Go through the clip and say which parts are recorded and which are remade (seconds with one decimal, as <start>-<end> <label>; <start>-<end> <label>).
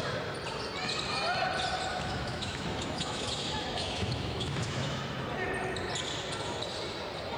0.0-1.9 recorded; 1.9-5.0 remade; 5.0-7.4 recorded